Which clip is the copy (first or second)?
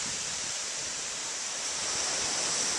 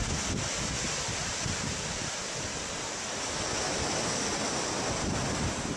first